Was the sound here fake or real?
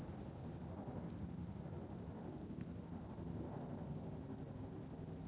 real